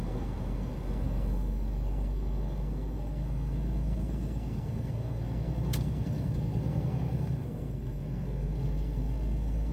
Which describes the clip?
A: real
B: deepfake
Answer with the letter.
B